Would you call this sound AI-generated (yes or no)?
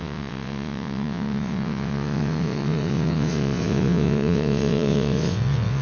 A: yes